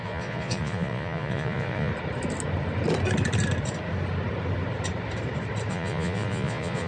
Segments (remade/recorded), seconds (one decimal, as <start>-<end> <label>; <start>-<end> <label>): 0.0-1.9 remade; 1.9-5.7 recorded; 5.7-6.9 remade